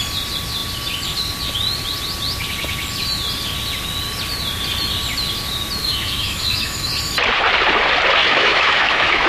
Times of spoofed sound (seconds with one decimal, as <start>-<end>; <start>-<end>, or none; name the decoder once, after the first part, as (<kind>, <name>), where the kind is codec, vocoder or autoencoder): 5.8-6.9 (autoencoder, DAC-VAE); 8.2-9.3